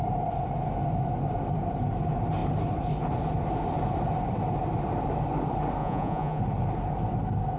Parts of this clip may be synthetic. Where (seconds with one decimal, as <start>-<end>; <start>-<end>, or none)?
5.8-6.4